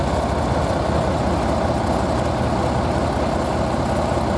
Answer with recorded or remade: recorded